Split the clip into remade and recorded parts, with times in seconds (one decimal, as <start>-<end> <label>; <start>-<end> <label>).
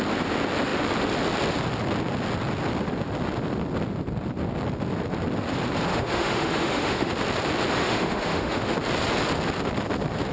0.0-5.9 recorded; 5.9-7.1 remade; 7.1-7.8 recorded; 7.8-8.7 remade; 8.7-10.3 recorded